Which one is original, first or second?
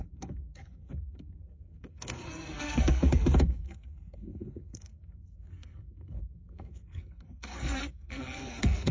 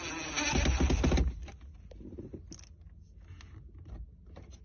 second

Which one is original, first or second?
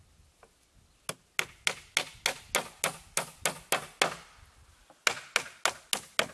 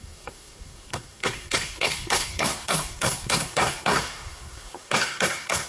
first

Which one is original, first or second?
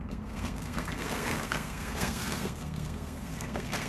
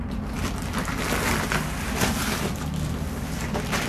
second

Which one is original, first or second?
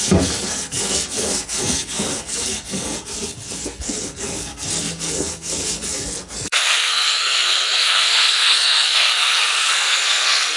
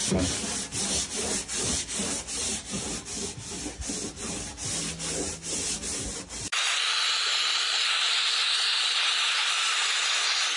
second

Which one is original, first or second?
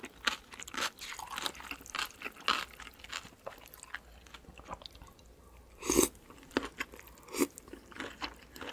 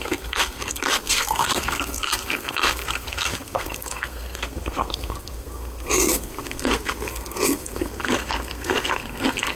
first